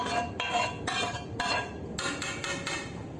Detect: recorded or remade recorded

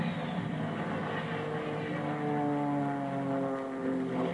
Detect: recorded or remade recorded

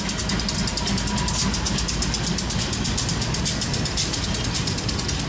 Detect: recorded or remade recorded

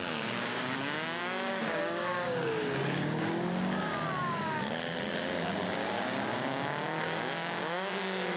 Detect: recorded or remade remade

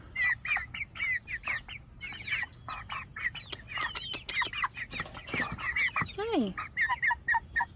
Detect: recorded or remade recorded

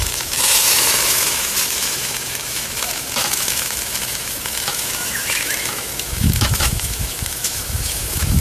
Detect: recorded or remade remade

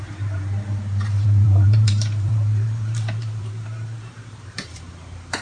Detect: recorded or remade remade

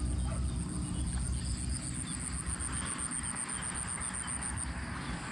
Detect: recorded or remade recorded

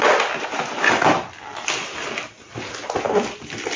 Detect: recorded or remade recorded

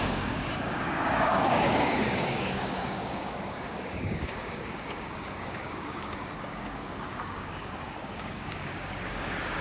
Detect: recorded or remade remade